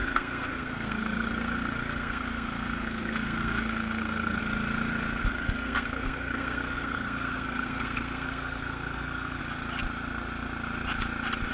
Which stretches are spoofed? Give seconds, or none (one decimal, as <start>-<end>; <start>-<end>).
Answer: 0.0-4.4; 5.2-9.4